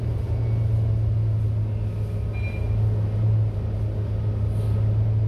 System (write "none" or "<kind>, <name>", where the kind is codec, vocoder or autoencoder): none